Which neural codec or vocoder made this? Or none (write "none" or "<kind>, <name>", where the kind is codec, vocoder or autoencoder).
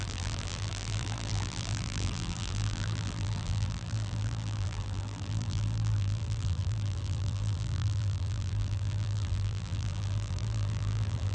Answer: vocoder, BigVGAN v2